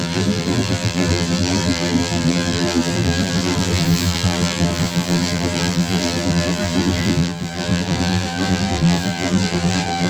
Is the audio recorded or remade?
remade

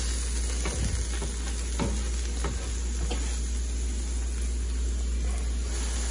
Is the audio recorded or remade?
recorded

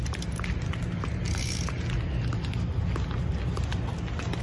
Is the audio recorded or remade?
recorded